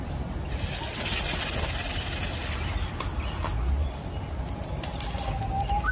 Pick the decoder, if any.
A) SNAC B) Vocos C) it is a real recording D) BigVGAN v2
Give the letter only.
C